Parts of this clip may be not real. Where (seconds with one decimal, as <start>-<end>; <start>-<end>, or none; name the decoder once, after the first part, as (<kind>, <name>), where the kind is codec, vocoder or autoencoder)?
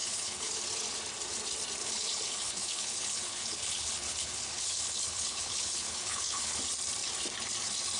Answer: 0.0-0.5 (codec, HILCodec); 1.8-6.6